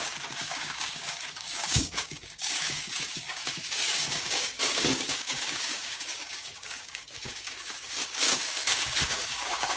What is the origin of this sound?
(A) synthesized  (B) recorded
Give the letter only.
A